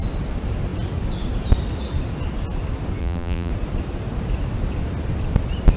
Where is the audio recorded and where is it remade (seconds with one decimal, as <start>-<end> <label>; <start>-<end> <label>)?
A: 0.0-3.0 recorded; 3.0-3.5 remade; 3.5-5.8 recorded